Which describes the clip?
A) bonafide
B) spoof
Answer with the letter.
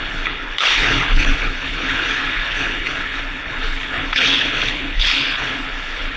B